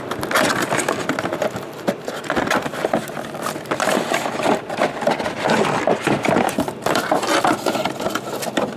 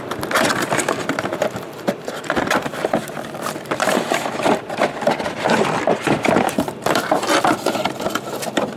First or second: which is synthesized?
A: second